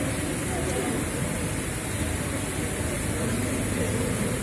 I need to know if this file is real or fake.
real